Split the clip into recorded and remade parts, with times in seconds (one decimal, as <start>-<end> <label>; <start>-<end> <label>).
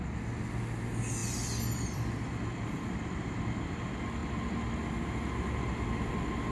0.0-1.2 recorded; 1.2-3.4 remade; 3.4-6.5 recorded